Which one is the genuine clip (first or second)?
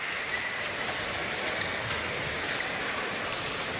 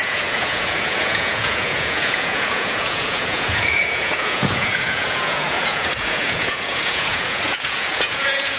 first